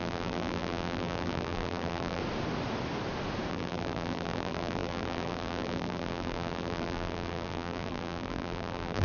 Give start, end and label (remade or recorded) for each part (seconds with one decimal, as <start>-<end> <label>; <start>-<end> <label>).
0.0-2.2 remade; 2.2-3.5 recorded; 3.5-9.0 remade